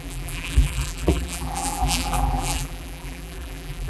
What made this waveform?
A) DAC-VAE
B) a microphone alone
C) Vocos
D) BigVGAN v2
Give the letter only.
D